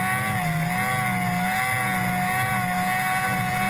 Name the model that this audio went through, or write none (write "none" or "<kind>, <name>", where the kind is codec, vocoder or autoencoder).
none